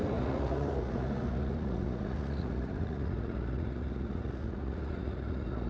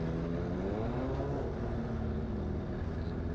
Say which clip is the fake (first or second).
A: first